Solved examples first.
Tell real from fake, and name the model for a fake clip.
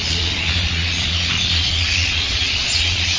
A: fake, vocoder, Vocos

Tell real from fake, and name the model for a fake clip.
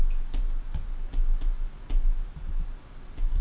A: real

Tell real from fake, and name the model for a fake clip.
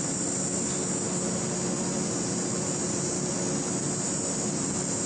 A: real